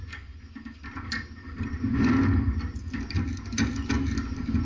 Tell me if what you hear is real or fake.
real